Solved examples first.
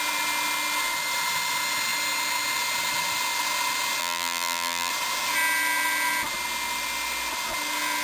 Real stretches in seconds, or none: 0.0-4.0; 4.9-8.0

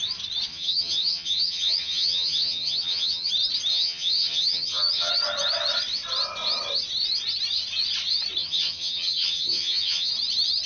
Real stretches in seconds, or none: 0.0-0.5; 3.3-3.7; 5.1-8.4; 10.1-10.7